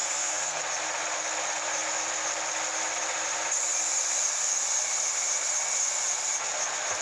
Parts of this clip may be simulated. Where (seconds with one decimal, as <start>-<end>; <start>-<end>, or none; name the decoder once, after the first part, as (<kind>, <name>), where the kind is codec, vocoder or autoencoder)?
0.0-0.6 (codec, SNAC)